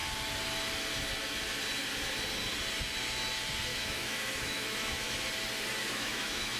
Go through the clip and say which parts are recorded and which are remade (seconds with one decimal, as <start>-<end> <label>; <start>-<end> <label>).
0.0-3.7 recorded; 3.7-5.1 remade; 5.1-5.8 recorded; 5.8-6.6 remade